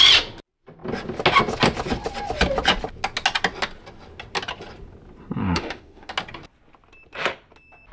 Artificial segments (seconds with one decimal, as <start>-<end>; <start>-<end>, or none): 5.4-6.1